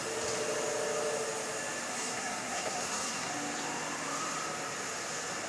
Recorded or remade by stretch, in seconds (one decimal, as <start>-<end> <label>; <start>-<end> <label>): 0.0-1.9 recorded; 1.9-3.3 remade; 3.3-5.5 recorded